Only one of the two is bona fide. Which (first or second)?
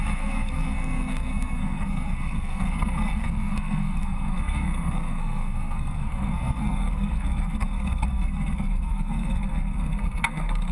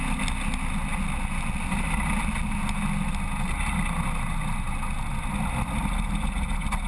second